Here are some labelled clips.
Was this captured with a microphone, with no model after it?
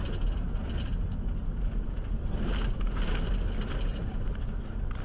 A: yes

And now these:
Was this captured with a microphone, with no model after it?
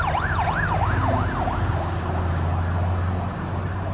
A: yes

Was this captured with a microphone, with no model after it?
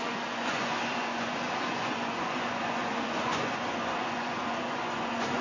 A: no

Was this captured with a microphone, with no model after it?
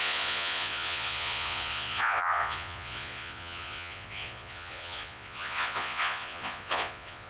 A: no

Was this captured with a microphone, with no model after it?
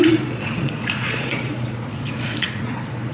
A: no